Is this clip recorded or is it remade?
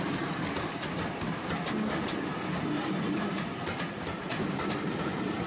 recorded